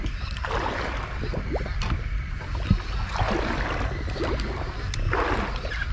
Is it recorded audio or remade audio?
recorded